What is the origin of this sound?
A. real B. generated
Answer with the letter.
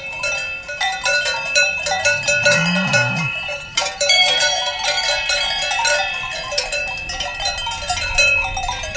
B